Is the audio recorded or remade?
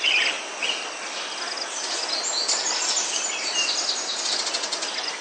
recorded